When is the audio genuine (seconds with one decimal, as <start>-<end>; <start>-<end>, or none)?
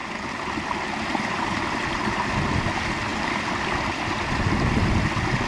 0.0-5.5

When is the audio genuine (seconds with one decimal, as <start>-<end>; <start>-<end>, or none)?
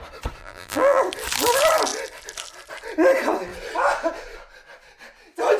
0.0-0.4; 1.0-5.6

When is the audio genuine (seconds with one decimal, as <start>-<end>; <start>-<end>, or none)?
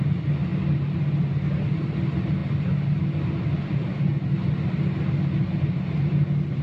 0.0-6.6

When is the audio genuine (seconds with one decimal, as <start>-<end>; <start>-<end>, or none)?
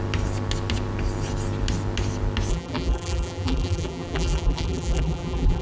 0.0-2.5